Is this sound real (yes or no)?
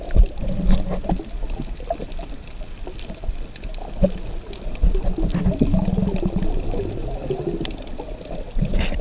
yes